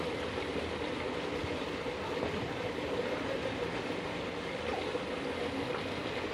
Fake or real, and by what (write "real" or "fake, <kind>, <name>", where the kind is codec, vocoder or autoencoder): real